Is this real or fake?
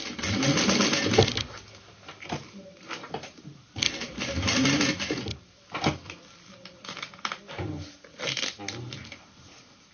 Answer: real